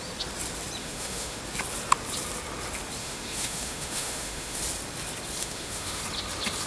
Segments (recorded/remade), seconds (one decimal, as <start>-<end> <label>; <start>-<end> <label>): 0.0-0.8 recorded; 0.8-1.4 remade; 1.4-3.0 recorded; 3.0-4.6 remade; 4.6-5.4 recorded; 5.4-6.0 remade; 6.0-6.7 recorded